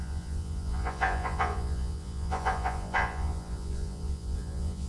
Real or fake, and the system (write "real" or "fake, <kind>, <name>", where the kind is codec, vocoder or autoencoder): fake, vocoder, Vocos